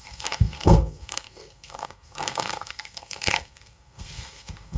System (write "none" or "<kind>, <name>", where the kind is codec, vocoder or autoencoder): codec, SNAC